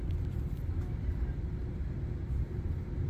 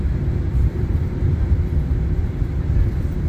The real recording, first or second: first